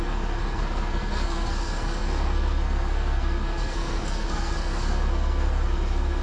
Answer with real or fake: fake